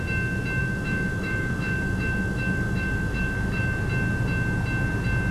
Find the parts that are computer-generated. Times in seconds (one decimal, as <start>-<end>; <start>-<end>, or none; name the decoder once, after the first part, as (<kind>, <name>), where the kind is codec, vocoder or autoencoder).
0.6-3.7 (autoencoder, DAC-VAE)